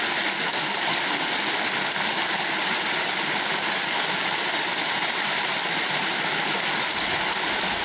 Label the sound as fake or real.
real